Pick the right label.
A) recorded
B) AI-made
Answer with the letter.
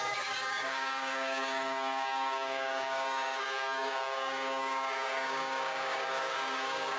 B